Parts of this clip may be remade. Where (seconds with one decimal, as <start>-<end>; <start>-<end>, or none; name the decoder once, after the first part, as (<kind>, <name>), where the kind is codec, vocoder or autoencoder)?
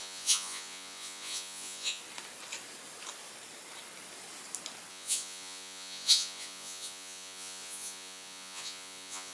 0.0-2.0 (vocoder, Vocos); 4.9-9.3